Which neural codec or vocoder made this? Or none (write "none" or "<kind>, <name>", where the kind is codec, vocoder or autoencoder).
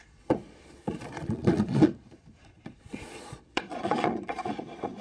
vocoder, Vocos